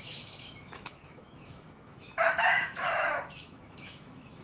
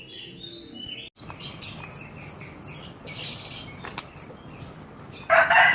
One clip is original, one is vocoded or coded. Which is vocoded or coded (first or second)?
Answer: first